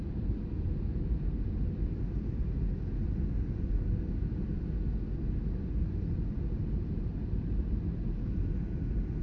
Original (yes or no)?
yes